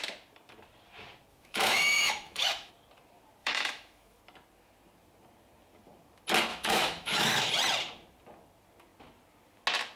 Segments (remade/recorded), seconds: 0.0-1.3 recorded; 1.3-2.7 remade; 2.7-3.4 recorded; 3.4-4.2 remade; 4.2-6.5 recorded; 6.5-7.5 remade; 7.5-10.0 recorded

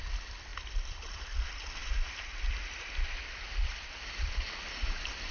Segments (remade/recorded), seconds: 0.0-5.3 remade

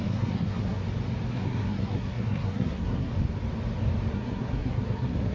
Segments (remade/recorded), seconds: 0.0-0.8 remade; 0.8-1.3 recorded; 1.3-3.1 remade; 3.1-4.1 recorded; 4.1-5.3 remade

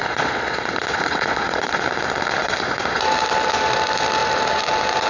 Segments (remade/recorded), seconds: 0.0-1.8 remade; 1.8-2.4 recorded; 2.4-3.0 remade; 3.0-5.1 recorded